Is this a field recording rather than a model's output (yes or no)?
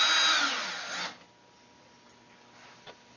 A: yes